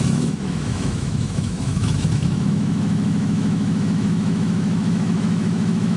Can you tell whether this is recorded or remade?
remade